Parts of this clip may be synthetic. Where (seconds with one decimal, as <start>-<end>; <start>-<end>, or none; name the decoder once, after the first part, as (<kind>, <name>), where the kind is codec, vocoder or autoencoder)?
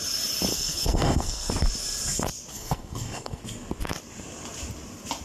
0.5-1.5 (codec, SNAC); 2.5-3.4